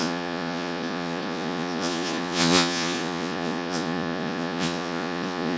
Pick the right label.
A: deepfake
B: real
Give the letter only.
A